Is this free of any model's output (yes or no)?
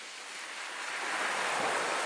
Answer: yes